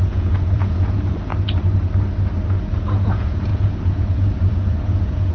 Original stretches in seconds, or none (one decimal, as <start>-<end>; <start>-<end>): 1.3-2.7